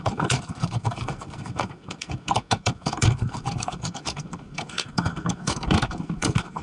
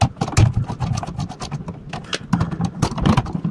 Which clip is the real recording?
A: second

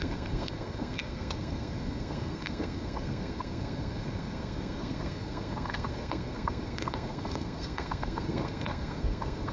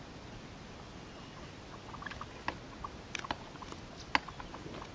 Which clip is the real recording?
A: second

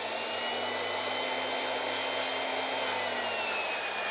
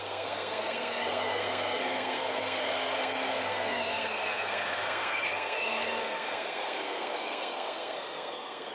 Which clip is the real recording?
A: first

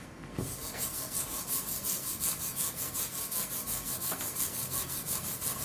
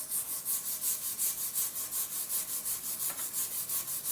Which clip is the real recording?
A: second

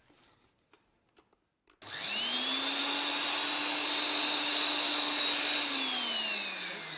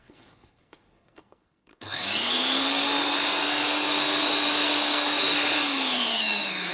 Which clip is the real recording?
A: first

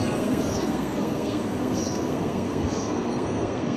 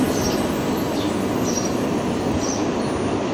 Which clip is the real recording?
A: second